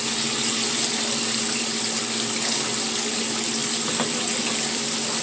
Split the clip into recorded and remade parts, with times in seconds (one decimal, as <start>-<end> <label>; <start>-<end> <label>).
0.0-5.2 recorded